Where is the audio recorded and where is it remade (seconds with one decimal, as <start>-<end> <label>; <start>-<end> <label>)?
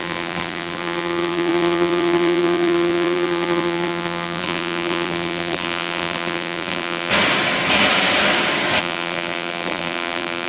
0.0-7.1 remade; 7.1-8.8 recorded; 8.8-10.5 remade